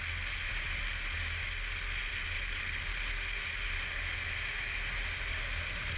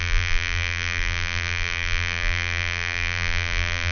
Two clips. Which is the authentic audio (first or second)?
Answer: first